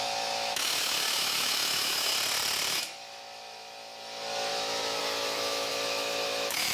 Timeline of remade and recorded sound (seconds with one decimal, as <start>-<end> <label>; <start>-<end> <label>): 0.0-2.1 remade; 2.1-2.7 recorded; 2.7-3.2 remade; 3.2-4.5 recorded; 4.5-6.7 remade